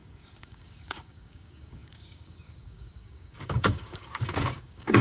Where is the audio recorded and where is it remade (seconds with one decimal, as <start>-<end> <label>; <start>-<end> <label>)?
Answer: 0.0-5.0 remade